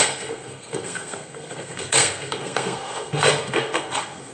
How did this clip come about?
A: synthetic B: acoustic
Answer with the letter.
A